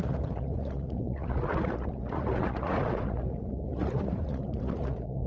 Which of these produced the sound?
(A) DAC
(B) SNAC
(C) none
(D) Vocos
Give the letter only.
D